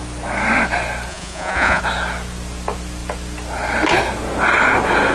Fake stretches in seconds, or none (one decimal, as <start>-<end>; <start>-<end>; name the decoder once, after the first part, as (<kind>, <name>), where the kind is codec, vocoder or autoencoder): 1.1-1.8 (vocoder, Vocos)